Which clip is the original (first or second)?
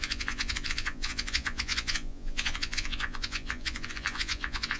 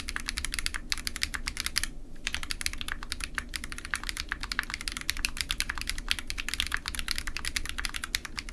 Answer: second